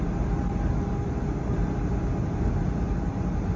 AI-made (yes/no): no